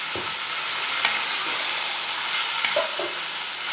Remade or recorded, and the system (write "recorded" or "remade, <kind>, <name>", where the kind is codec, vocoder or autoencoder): recorded